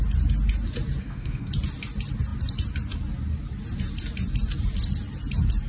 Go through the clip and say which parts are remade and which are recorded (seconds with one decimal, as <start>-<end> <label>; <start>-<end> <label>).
0.0-1.0 recorded; 1.0-1.5 remade; 1.5-5.7 recorded